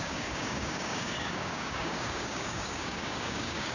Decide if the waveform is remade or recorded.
remade